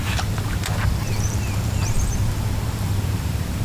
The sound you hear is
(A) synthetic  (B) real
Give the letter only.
A